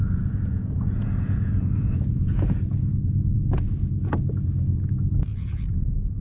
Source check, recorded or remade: remade